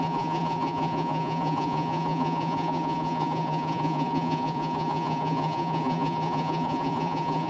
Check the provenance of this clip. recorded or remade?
remade